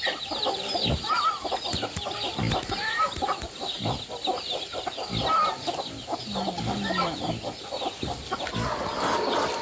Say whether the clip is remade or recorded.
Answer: recorded